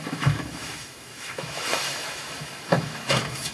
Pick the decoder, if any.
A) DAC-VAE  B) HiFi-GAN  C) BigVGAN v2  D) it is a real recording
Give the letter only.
A